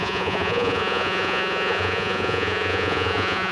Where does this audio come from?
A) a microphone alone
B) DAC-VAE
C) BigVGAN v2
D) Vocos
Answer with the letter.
D